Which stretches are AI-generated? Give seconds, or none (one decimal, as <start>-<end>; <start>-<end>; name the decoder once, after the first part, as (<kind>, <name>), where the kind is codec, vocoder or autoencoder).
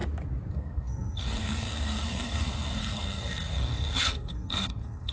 0.5-5.1 (codec, SNAC)